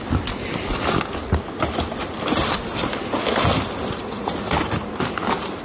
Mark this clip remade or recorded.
recorded